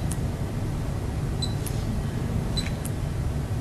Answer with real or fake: real